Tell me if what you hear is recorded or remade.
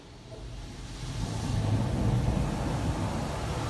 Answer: recorded